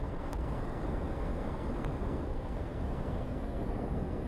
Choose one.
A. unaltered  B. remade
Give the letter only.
B